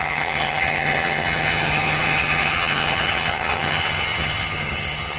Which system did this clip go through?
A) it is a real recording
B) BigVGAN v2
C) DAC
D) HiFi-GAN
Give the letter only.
D